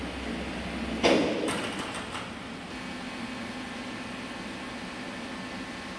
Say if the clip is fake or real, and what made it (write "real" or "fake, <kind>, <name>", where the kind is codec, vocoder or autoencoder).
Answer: real